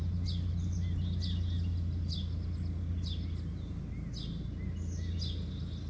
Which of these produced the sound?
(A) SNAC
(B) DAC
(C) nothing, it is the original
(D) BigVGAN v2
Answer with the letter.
C